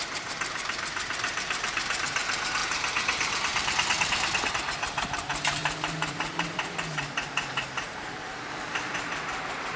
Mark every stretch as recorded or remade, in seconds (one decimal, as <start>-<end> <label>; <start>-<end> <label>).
0.0-9.8 remade